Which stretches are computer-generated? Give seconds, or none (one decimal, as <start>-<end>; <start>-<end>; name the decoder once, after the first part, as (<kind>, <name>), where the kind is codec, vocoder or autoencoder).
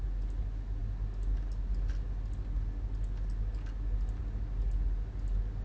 none